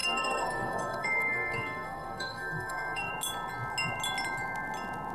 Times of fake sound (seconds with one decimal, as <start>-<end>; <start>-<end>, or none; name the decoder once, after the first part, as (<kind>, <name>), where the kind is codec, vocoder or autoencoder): 0.0-3.1 (codec, SNAC)